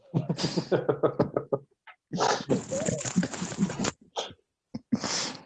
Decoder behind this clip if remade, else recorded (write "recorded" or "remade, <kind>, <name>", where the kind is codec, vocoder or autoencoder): recorded